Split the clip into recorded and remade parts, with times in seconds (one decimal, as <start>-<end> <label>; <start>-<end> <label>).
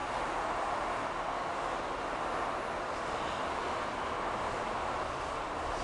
0.0-5.8 recorded